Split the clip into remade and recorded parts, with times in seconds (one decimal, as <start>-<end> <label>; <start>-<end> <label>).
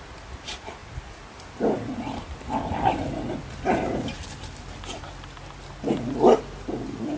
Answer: 0.0-7.2 recorded